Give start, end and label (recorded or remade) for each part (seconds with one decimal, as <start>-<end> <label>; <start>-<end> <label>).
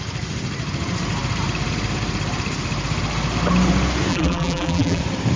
0.0-4.1 recorded; 4.1-5.0 remade; 5.0-5.4 recorded